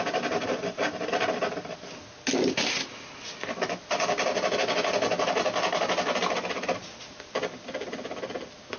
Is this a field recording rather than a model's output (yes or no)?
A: yes